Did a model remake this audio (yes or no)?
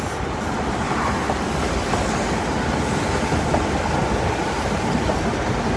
no